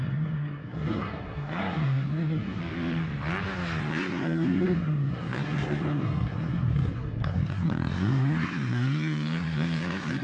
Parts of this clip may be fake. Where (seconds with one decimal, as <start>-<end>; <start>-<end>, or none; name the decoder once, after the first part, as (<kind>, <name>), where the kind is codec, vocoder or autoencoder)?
0.0-2.6 (codec, SNAC); 3.8-10.2